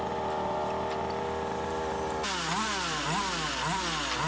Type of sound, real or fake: real